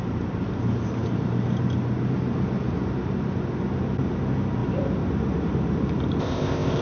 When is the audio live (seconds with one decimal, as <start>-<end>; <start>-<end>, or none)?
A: 0.0-6.2